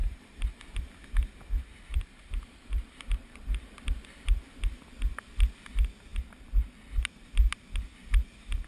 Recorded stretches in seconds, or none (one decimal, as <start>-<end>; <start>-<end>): 0.6-1.9; 4.6-8.7